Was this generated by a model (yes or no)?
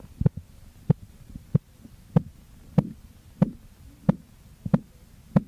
no